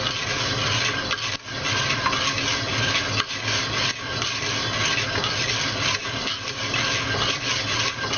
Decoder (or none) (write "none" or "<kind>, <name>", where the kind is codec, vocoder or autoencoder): none